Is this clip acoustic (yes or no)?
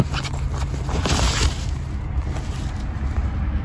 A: yes